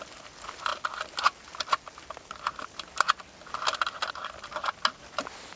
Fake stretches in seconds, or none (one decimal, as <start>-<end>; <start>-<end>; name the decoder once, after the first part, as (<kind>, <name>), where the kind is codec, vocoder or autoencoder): none